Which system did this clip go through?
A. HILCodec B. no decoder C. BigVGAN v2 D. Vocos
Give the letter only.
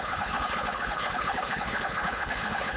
A